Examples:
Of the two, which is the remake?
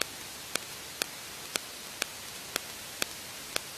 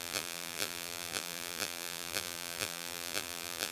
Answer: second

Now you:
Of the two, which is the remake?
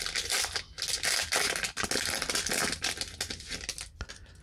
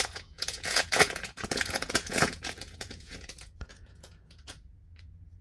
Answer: second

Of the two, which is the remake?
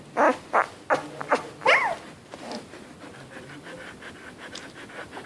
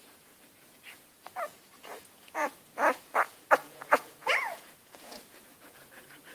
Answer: second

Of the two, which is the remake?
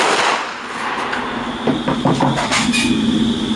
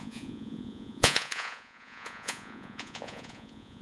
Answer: second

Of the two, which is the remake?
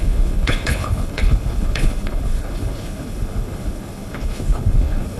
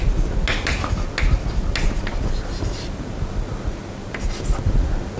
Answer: first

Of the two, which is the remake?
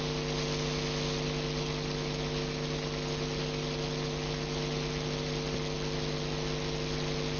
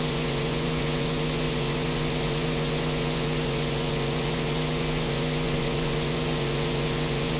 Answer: second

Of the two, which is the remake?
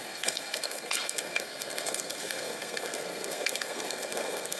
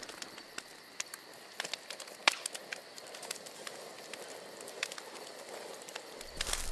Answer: first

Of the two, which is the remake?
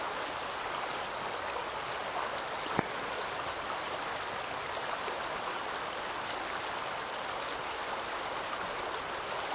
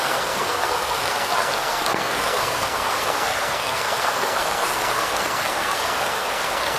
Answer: second